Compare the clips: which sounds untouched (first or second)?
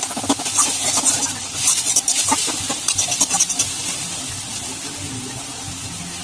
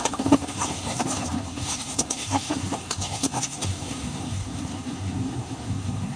first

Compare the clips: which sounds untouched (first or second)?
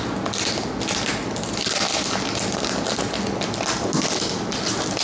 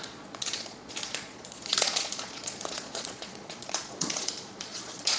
first